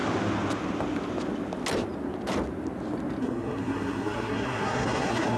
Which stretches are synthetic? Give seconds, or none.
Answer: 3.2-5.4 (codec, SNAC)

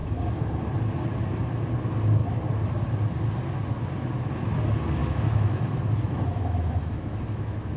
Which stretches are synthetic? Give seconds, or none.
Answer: 5.0-7.8 (autoencoder, DAC-VAE)

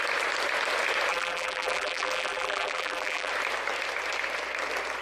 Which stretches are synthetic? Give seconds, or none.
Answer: 1.1-3.3 (vocoder, BigVGAN v2)

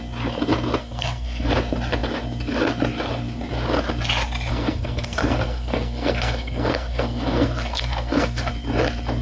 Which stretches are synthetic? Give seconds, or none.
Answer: 0.8-1.5 (codec, SNAC); 4.5-8.5

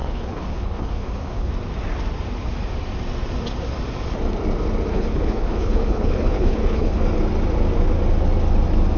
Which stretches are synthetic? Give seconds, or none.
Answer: 0.0-1.5 (codec, HILCodec); 4.9-7.0